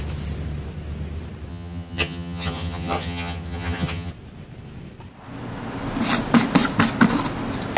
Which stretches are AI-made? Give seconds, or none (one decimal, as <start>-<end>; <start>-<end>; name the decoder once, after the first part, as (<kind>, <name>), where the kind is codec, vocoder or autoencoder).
1.5-4.1 (vocoder, HiFi-GAN)